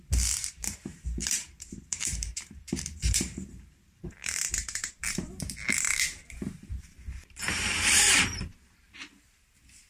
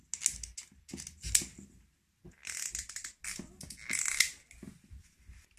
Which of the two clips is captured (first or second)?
second